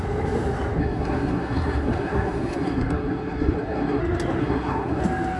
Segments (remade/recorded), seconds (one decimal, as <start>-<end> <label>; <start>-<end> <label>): 0.0-0.8 recorded; 0.8-4.0 remade; 4.0-4.4 recorded; 4.4-5.0 remade; 5.0-5.4 recorded